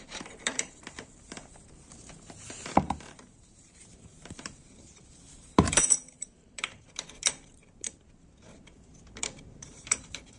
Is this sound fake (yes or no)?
yes